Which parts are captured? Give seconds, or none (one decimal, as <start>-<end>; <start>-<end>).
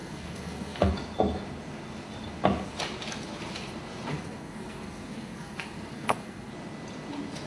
0.9-4.1; 6.5-7.5